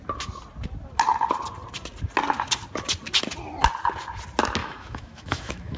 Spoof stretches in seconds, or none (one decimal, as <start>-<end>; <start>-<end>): 4.6-5.8